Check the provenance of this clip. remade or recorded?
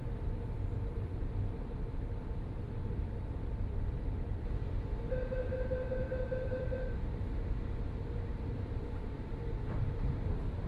remade